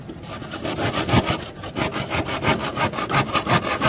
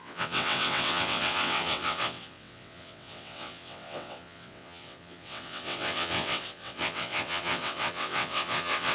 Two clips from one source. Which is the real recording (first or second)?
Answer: first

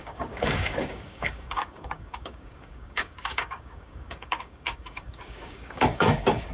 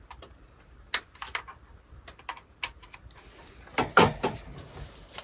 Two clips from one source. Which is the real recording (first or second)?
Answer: second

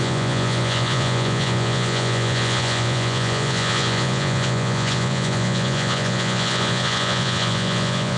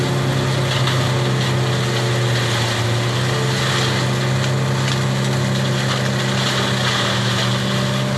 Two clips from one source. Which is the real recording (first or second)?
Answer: second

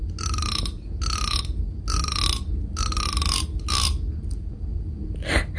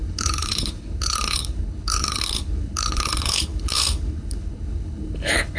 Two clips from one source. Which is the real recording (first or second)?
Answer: first